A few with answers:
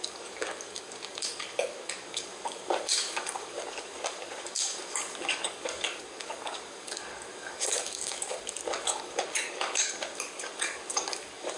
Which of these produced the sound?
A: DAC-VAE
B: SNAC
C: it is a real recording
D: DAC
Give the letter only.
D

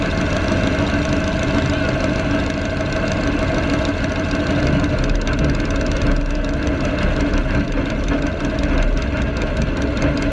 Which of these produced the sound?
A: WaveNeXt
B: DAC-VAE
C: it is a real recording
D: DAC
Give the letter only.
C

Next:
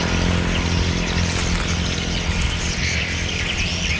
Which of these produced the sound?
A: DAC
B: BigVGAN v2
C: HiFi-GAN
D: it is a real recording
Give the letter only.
D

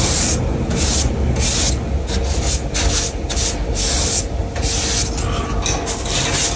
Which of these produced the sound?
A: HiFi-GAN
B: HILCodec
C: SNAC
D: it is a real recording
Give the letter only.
D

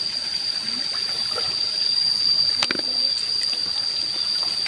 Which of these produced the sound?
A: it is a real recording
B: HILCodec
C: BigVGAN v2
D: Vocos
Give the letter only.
A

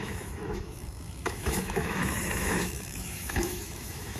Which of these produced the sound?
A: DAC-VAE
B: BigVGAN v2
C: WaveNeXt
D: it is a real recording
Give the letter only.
A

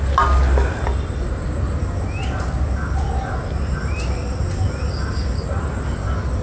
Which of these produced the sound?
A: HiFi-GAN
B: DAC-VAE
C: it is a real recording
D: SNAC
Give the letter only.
C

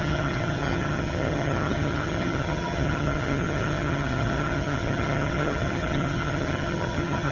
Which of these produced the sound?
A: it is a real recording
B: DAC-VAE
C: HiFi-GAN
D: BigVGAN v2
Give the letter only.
C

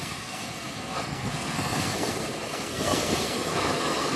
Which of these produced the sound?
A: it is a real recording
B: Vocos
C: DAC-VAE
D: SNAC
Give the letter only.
D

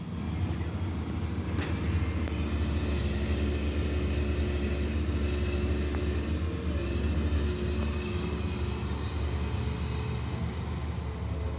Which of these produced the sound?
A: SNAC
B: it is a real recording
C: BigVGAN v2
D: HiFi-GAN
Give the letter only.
B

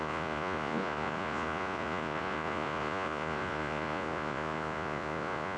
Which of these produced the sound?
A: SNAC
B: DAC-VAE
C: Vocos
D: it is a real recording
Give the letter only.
C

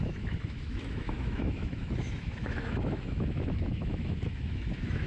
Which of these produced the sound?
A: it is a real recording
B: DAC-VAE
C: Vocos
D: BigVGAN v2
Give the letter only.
B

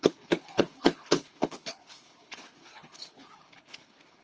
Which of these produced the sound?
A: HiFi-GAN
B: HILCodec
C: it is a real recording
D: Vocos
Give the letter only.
B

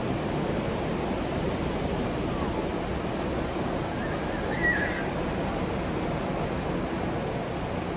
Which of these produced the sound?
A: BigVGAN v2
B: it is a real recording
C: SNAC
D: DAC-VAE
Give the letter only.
B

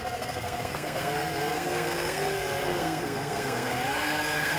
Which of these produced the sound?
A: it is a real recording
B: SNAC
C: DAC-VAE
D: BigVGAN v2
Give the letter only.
B